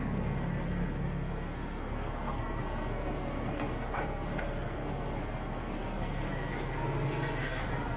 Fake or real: fake